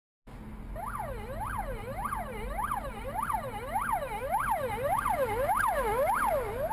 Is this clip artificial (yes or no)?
no